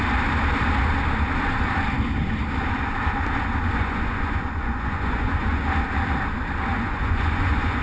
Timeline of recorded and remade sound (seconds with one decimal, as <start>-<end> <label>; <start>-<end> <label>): 0.0-3.7 recorded; 3.7-5.6 remade; 5.6-6.7 recorded; 6.7-7.8 remade